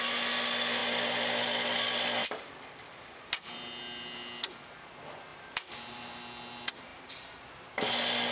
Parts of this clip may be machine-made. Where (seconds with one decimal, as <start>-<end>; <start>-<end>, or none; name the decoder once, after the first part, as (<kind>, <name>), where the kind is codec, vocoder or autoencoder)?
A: 5.3-6.2 (vocoder, BigVGAN v2)